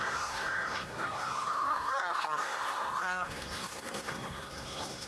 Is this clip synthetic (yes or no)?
yes